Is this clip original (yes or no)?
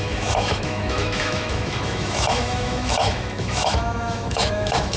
no